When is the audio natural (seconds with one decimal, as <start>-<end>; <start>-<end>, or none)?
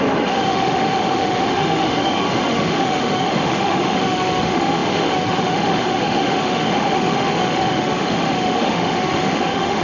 none